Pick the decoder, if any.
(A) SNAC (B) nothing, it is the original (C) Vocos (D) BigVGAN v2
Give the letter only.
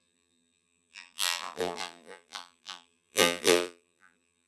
D